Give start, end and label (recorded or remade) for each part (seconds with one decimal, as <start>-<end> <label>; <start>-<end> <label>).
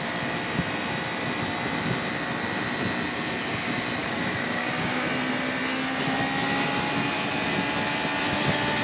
0.0-4.0 recorded; 4.0-5.1 remade; 5.1-8.8 recorded